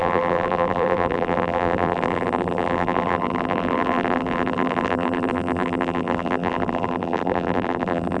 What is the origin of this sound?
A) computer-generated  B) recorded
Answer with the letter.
A